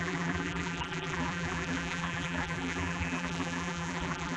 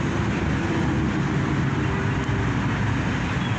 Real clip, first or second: second